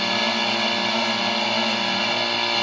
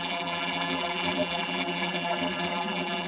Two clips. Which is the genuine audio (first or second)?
first